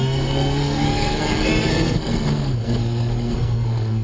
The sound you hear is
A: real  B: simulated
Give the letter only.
B